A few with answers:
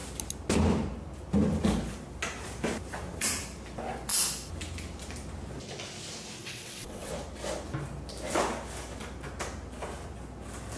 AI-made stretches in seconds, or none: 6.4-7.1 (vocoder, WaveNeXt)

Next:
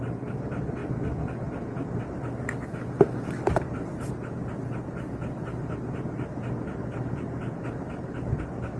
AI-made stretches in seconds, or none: none

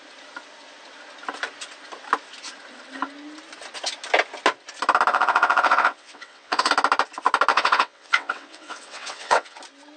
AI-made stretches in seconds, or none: 5.1-6.7 (vocoder, WaveNeXt); 7.5-9.6